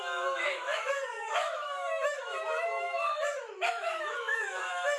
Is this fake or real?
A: fake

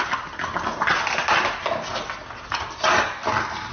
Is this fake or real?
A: real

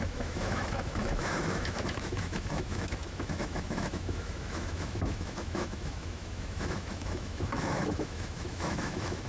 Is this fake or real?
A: fake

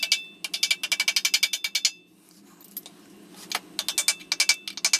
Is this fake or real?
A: real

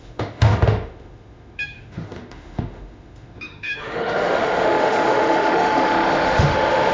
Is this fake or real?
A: fake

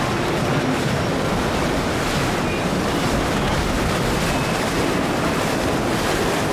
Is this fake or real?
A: real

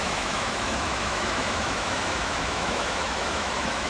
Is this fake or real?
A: fake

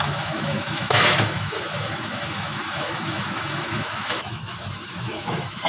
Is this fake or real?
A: fake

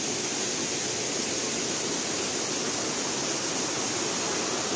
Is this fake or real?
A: real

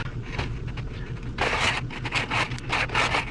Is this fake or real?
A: real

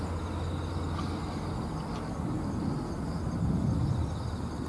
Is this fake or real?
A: real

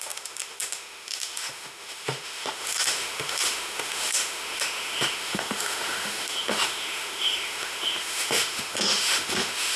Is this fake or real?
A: fake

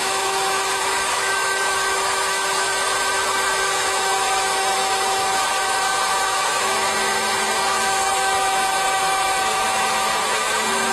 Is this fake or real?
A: fake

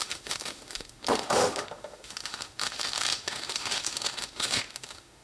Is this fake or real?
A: fake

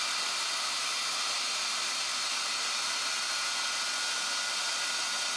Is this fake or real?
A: real